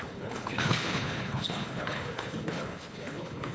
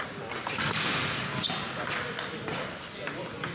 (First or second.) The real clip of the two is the second